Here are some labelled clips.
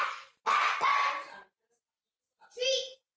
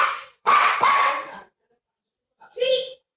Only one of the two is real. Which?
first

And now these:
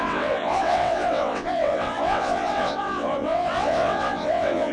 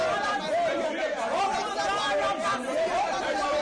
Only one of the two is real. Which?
second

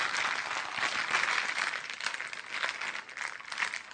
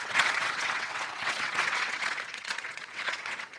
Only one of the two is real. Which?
first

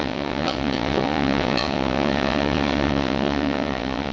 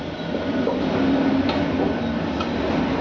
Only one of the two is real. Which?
second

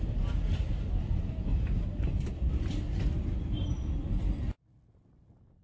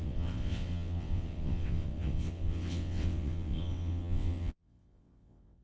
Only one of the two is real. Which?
first